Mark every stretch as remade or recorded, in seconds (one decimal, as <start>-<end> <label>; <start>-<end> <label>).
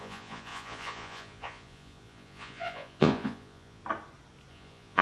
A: 0.0-3.8 remade; 3.8-4.5 recorded; 4.5-5.0 remade